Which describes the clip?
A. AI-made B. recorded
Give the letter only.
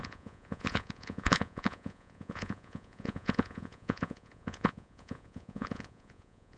A